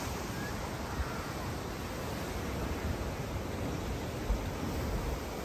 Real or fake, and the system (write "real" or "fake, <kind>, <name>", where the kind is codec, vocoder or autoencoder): real